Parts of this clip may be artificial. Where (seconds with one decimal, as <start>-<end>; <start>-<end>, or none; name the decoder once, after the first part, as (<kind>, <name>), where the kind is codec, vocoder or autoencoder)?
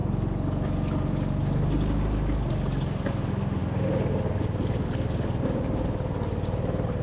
none